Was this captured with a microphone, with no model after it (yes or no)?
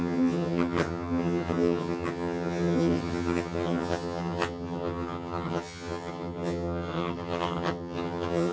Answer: no